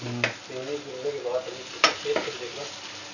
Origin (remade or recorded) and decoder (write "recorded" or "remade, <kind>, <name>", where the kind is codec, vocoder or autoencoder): recorded